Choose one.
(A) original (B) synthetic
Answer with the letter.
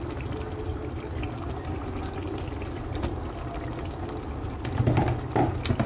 A